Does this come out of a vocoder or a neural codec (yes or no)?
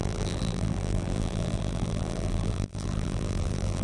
yes